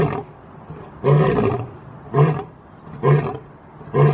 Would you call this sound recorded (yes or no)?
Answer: yes